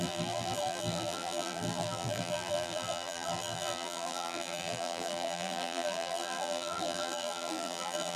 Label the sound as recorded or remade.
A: remade